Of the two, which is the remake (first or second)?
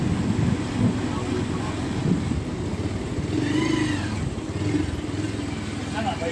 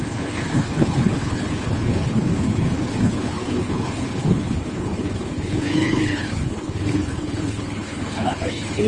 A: second